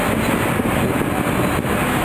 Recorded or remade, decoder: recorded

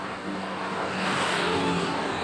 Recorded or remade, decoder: remade, codec, DAC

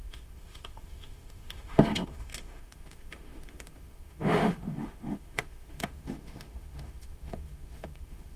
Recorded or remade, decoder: remade, autoencoder, DAC-VAE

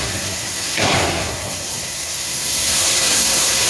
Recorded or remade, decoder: remade, codec, SNAC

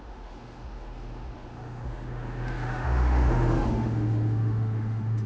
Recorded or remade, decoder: remade, autoencoder, DAC-VAE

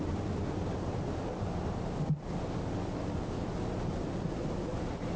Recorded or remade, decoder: recorded